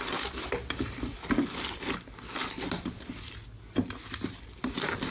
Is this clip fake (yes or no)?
no